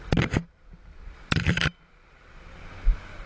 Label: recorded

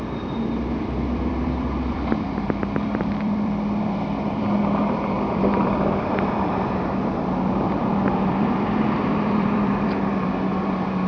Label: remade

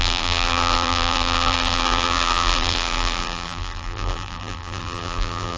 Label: remade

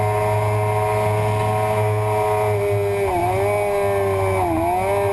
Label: recorded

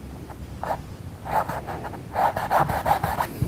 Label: recorded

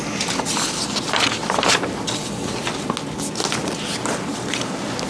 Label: recorded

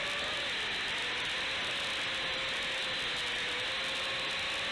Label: recorded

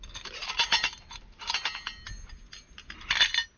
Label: recorded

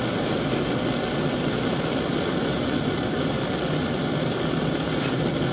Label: remade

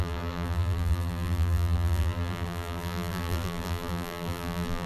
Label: remade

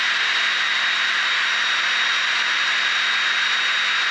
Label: recorded